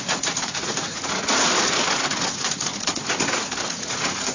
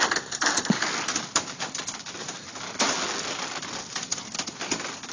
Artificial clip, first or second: first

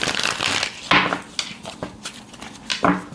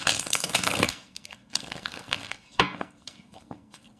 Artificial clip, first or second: second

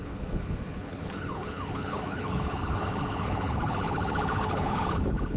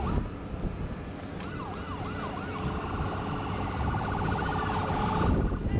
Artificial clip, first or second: first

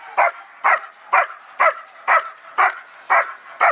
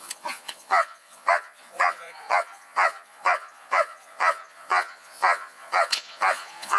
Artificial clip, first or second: second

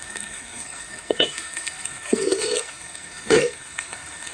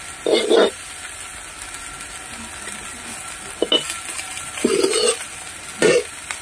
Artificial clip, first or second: first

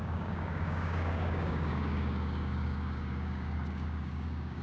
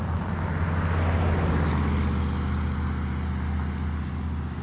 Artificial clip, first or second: first